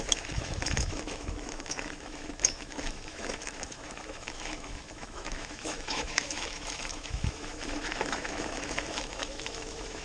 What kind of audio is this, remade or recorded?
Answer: remade